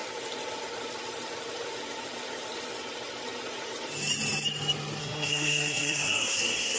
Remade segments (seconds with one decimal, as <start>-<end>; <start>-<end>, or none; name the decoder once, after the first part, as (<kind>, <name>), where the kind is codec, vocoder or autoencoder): 5.0-6.8 (codec, SNAC)